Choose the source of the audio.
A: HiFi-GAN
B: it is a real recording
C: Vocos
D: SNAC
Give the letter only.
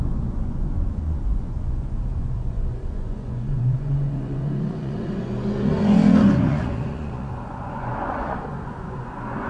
C